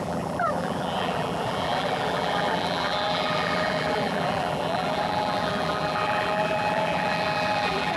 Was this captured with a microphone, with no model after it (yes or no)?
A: no